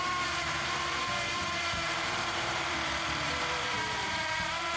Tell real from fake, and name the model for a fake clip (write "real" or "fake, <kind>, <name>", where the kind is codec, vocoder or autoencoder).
fake, vocoder, BigVGAN v2